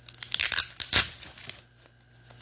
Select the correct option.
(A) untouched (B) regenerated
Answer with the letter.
A